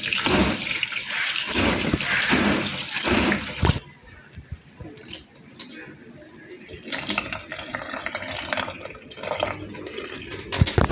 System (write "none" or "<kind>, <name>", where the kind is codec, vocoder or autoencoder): none